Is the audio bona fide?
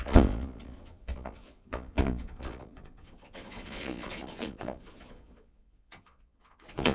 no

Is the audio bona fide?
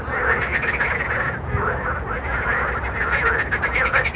yes